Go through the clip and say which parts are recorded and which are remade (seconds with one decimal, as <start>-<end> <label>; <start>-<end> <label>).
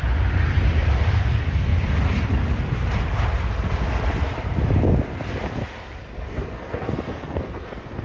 0.0-6.0 recorded; 6.0-8.0 remade